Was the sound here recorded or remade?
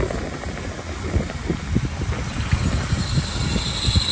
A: recorded